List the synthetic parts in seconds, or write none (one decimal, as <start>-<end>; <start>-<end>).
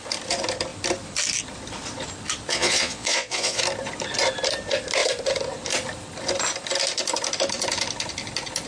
2.5-3.6